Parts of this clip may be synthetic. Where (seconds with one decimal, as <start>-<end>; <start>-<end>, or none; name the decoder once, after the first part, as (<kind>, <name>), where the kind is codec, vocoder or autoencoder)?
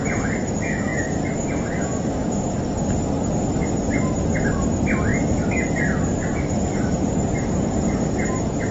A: 5.1-5.8 (vocoder, BigVGAN v2); 6.3-8.0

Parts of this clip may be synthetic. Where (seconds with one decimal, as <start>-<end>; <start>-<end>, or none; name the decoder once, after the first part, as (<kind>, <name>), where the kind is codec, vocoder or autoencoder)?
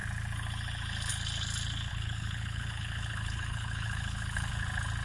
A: 1.9-4.5 (codec, HILCodec)